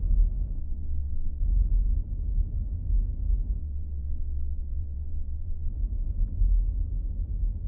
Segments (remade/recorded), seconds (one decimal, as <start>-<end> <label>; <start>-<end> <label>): 0.0-0.6 recorded; 0.6-1.4 remade; 1.4-3.6 recorded; 3.6-5.7 remade; 5.7-7.7 recorded